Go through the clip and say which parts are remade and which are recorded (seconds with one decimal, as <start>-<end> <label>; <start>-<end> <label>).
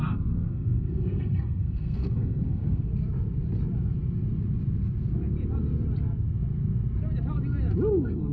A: 0.0-2.9 remade; 2.9-7.9 recorded; 7.9-8.3 remade